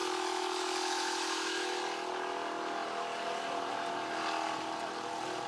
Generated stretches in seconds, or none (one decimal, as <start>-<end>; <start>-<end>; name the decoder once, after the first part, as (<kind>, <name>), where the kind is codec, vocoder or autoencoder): 0.0-1.8 (autoencoder, DAC-VAE)